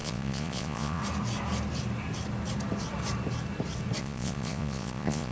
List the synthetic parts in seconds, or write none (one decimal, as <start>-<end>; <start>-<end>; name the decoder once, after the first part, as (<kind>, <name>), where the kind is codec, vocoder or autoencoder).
0.0-1.0 (vocoder, Vocos); 4.0-5.3